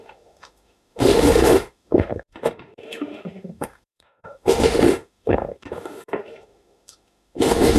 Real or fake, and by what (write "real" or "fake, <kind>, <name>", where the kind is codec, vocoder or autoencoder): fake, autoencoder, DAC-VAE